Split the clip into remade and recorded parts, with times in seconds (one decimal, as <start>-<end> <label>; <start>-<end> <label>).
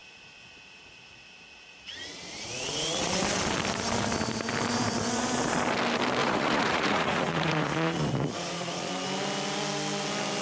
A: 0.0-3.1 remade; 3.1-6.2 recorded; 6.2-8.9 remade; 8.9-10.4 recorded